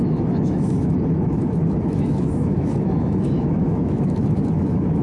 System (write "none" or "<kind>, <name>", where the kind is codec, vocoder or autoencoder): autoencoder, DAC-VAE